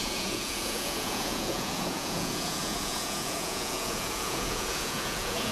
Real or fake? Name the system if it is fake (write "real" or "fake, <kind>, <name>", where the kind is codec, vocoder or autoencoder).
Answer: fake, vocoder, Vocos